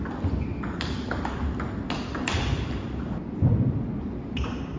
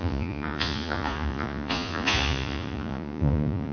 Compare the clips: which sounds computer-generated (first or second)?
second